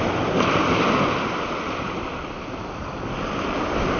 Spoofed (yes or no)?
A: no